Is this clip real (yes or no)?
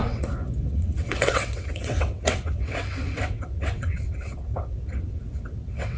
no